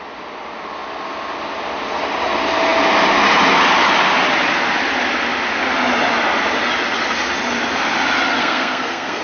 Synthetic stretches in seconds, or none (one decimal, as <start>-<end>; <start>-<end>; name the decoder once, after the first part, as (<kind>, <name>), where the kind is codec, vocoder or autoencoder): 8.4-9.2 (codec, SNAC)